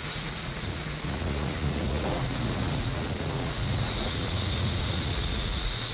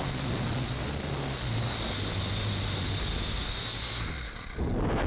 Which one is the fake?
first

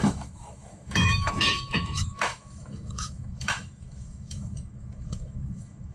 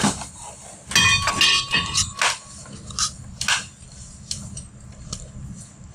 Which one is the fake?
first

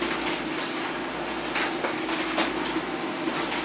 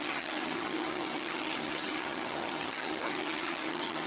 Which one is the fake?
second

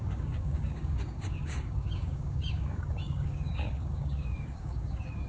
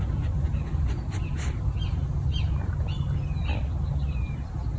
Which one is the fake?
first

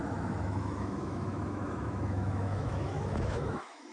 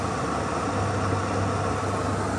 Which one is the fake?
first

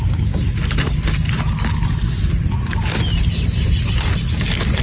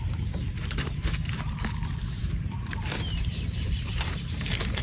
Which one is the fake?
second